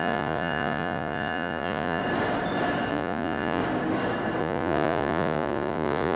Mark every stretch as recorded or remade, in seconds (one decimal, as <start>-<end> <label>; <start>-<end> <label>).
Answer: 0.0-2.0 remade; 2.0-2.9 recorded; 2.9-3.6 remade; 3.6-4.4 recorded; 4.4-6.2 remade